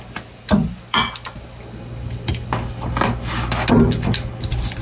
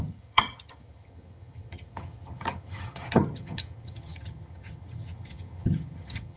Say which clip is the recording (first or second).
first